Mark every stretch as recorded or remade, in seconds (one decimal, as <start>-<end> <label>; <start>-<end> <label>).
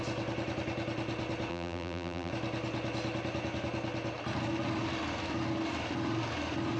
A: 0.0-1.5 recorded; 1.5-2.3 remade; 2.3-6.8 recorded